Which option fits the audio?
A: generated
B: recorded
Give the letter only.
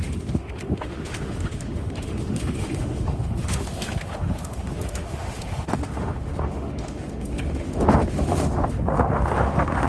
A